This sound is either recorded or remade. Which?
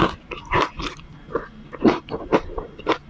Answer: recorded